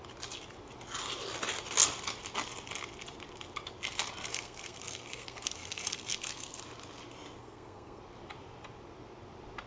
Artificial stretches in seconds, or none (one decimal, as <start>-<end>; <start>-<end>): 4.3-6.6; 7.4-8.0